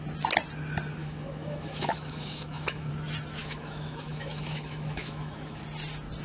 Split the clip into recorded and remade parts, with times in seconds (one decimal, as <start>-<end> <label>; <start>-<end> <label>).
0.0-1.0 recorded; 1.0-2.9 remade; 2.9-3.4 recorded; 3.4-5.6 remade; 5.6-6.2 recorded